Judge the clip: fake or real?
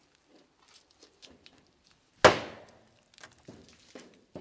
real